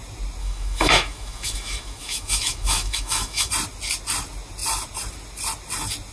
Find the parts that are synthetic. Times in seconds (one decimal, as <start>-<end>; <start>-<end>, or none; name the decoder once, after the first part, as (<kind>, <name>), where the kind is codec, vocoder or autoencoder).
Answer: 0.4-3.5 (autoencoder, DAC-VAE)